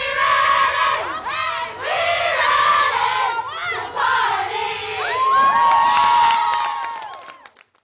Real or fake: real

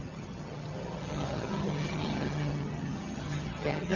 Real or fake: fake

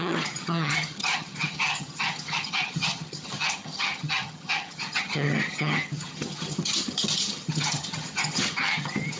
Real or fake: fake